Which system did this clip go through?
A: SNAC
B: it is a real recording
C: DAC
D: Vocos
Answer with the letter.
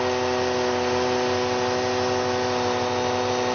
B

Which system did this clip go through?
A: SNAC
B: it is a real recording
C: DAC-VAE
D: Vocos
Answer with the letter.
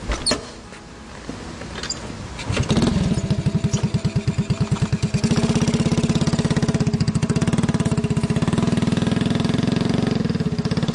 B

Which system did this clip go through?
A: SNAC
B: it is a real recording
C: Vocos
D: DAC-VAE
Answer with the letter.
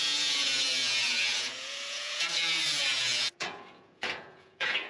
C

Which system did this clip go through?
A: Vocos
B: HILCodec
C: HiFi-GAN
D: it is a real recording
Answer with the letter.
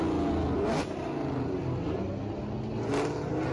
D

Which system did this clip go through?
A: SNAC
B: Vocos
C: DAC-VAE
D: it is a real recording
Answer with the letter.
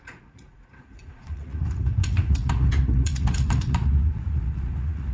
B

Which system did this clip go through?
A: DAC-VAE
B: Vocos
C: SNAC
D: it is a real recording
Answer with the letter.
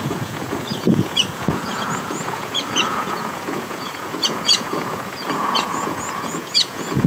B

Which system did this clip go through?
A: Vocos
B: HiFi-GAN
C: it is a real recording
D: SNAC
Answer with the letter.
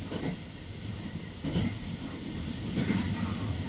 C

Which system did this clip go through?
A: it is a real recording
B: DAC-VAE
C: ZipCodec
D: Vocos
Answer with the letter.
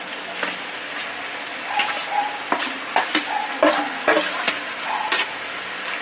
A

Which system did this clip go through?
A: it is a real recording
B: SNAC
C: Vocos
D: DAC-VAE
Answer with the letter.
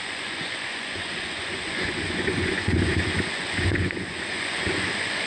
C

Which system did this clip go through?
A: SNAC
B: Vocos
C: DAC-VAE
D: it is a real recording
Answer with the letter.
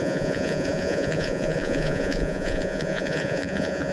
B